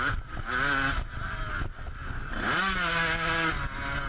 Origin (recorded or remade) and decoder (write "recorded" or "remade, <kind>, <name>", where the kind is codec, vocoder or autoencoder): recorded